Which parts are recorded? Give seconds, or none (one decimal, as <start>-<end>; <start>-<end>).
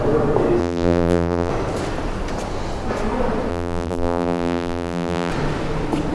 0.0-0.6; 1.5-3.5; 5.3-6.1